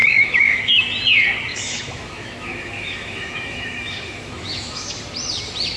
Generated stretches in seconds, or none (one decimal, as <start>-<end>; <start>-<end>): 0.0-0.8; 1.5-5.0